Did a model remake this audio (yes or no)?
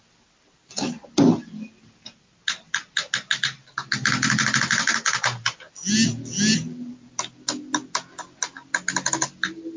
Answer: no